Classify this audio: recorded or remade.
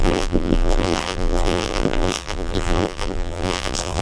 remade